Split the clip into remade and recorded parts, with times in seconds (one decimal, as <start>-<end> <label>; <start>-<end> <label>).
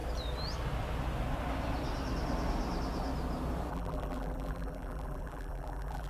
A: 0.0-3.7 recorded; 3.7-6.1 remade